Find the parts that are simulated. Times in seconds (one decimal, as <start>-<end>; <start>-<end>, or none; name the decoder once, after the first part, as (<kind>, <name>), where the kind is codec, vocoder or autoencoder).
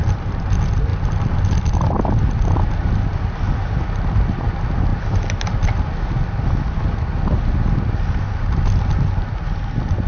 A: none